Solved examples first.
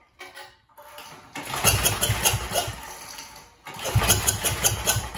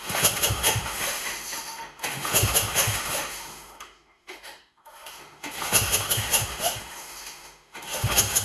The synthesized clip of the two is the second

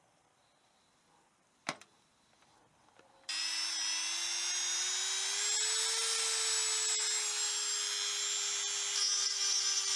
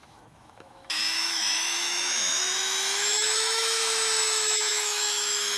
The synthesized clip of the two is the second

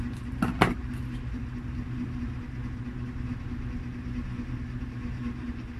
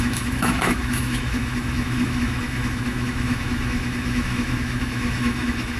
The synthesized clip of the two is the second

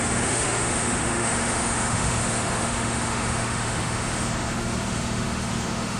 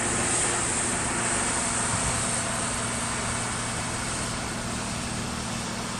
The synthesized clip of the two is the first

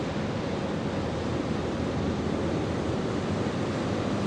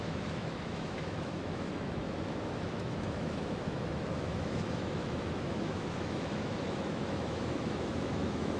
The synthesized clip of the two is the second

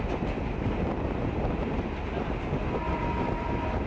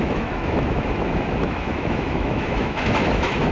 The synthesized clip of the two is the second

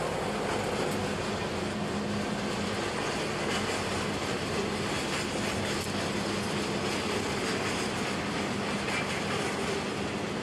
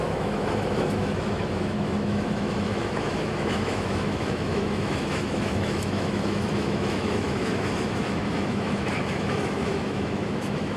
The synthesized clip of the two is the second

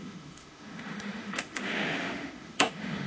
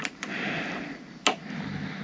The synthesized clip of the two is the first